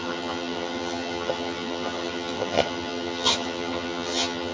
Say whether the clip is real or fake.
fake